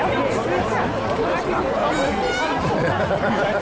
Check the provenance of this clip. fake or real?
real